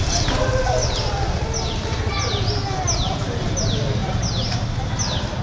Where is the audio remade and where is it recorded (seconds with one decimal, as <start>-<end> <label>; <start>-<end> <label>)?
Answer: 0.0-5.4 recorded